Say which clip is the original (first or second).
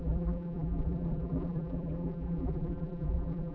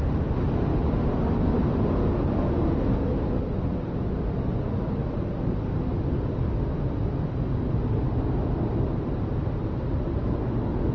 second